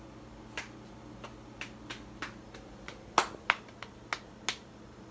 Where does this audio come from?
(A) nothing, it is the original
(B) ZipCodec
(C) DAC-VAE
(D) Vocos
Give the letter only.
A